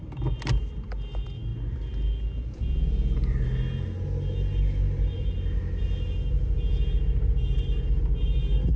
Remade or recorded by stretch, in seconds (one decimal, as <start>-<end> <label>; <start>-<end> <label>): 0.0-8.8 recorded